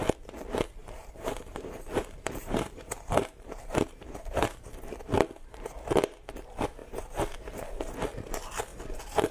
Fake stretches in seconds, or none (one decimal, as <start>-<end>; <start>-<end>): 0.8-4.3; 6.8-7.4